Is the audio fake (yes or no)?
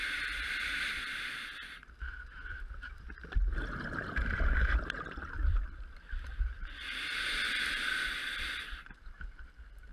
yes